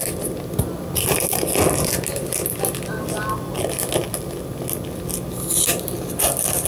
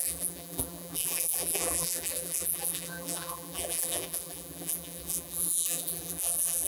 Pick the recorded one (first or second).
first